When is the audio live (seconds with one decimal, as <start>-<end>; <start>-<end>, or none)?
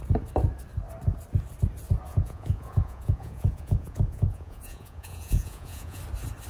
0.0-2.1; 6.0-6.5